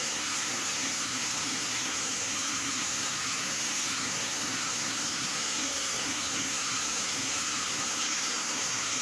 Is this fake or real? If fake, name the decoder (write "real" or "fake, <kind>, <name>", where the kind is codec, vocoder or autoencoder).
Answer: fake, codec, SNAC